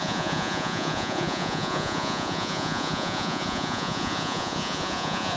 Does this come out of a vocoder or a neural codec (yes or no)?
yes